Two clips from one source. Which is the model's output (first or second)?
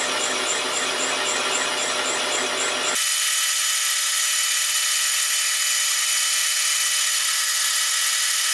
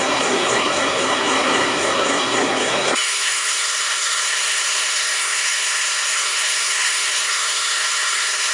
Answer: second